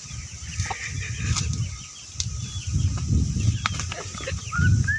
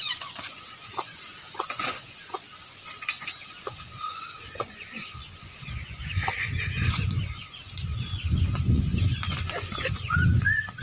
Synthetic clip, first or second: second